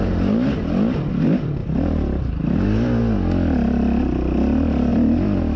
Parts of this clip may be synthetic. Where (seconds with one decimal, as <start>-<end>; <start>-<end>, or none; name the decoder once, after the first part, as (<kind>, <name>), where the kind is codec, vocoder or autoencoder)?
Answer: 1.6-3.0 (vocoder, BigVGAN v2); 4.9-5.6